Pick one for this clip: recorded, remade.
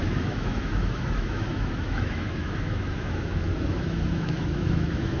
remade